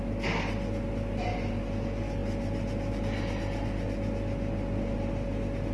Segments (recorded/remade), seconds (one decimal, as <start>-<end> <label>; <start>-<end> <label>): 0.0-5.7 recorded